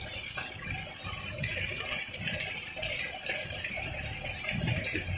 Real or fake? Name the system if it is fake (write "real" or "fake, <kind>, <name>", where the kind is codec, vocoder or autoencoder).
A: real